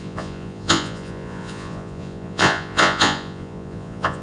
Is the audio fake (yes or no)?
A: yes